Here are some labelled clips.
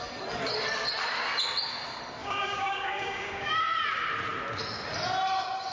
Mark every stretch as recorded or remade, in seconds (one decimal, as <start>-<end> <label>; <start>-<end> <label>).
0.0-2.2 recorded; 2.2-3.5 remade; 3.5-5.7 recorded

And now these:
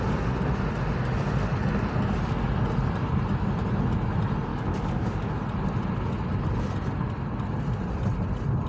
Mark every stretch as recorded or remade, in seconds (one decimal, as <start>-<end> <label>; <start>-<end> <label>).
0.0-4.5 recorded; 4.5-5.3 remade; 5.3-8.7 recorded

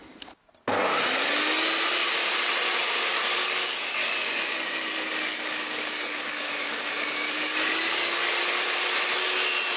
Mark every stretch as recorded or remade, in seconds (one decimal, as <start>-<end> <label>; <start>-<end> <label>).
0.0-3.1 recorded; 3.1-8.4 remade; 8.4-9.8 recorded

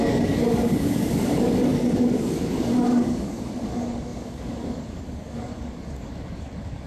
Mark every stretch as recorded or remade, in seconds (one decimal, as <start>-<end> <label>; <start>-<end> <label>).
0.0-6.9 remade

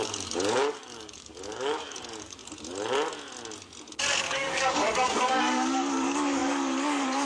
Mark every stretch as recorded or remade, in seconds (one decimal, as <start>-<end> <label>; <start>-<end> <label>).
0.0-2.4 remade; 2.4-4.0 recorded; 4.0-7.3 remade

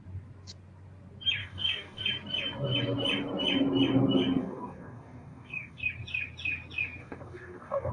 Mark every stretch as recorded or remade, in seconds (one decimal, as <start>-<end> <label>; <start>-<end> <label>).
0.0-1.4 recorded; 1.4-2.0 remade; 2.0-4.4 recorded; 4.4-5.8 remade; 5.8-7.0 recorded; 7.0-7.9 remade